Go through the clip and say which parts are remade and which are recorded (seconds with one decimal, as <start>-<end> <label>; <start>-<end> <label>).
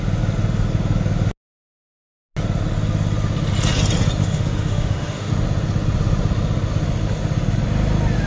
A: 0.0-4.2 recorded; 4.2-5.3 remade; 5.3-8.3 recorded